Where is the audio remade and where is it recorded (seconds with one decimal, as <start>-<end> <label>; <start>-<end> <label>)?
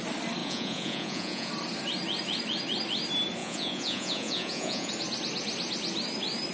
0.0-0.4 recorded; 0.4-1.5 remade; 1.5-3.4 recorded; 3.4-4.9 remade; 4.9-6.5 recorded